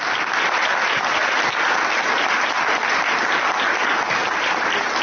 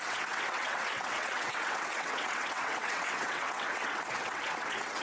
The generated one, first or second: second